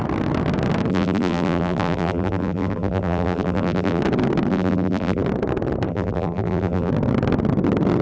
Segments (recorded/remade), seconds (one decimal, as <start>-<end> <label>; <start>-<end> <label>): 0.0-0.9 recorded; 0.9-4.0 remade; 4.0-4.5 recorded; 4.5-5.2 remade; 5.2-5.9 recorded; 5.9-6.9 remade; 6.9-8.0 recorded